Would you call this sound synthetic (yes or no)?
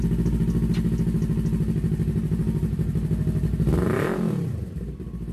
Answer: no